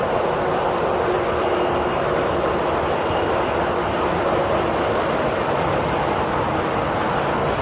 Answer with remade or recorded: recorded